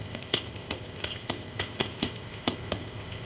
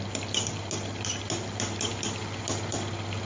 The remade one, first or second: first